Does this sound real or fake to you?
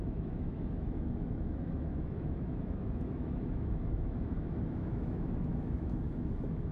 fake